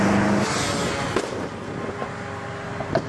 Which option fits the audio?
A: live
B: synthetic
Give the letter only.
A